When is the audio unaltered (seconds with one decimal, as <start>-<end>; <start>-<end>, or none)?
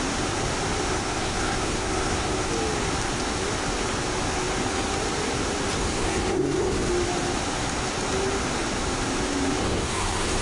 0.0-0.9; 2.5-5.8; 6.9-9.6